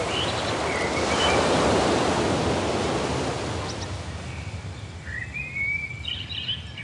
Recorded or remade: recorded